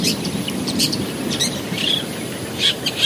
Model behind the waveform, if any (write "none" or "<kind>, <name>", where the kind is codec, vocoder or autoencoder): vocoder, BigVGAN v2